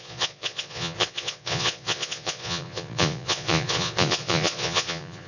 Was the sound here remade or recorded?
remade